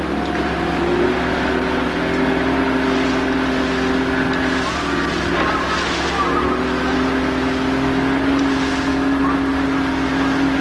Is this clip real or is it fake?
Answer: real